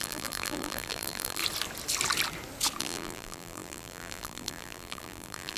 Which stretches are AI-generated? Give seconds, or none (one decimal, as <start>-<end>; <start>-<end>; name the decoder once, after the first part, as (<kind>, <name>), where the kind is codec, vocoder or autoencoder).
0.0-1.4 (vocoder, BigVGAN v2); 2.8-5.6

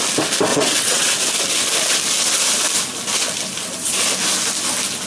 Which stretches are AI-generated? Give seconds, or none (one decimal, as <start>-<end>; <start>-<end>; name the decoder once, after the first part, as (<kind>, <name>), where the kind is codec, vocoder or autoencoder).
0.5-1.1 (vocoder, WaveNeXt)